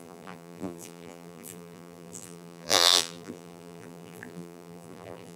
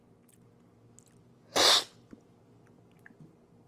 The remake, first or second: first